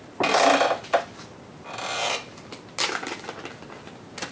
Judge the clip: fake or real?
real